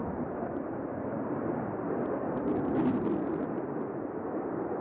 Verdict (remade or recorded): remade